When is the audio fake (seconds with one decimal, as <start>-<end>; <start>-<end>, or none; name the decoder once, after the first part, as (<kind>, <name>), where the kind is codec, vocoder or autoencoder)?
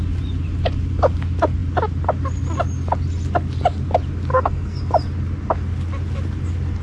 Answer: 4.3-4.8 (codec, SNAC)